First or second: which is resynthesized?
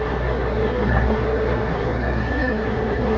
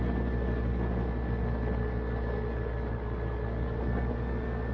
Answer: first